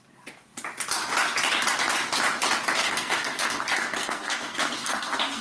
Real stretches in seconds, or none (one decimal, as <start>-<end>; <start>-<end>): 0.0-2.8